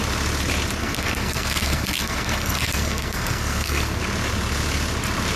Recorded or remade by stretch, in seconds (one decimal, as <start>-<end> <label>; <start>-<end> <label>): 0.0-0.8 recorded; 0.8-4.0 remade; 4.0-5.4 recorded